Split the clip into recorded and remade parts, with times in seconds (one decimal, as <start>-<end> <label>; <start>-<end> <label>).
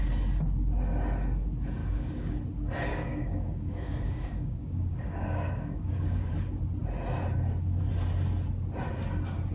0.0-1.8 recorded; 1.8-2.4 remade; 2.4-2.9 recorded; 2.9-6.3 remade; 6.3-9.5 recorded